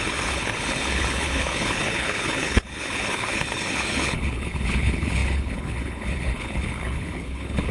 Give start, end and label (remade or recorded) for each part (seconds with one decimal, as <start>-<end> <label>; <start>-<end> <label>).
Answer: 0.0-7.7 remade